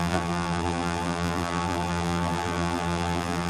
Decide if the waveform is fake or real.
fake